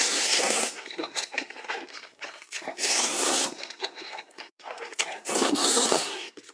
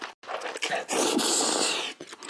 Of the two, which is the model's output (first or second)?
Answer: first